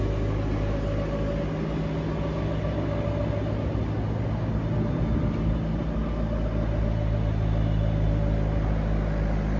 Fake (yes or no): no